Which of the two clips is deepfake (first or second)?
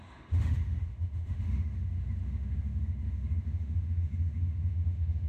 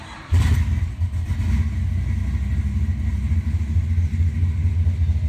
first